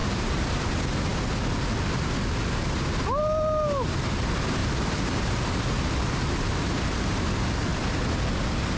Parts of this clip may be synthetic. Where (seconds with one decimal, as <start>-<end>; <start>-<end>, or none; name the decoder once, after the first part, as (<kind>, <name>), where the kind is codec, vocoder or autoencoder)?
0.0-0.7 (vocoder, BigVGAN v2); 4.6-7.3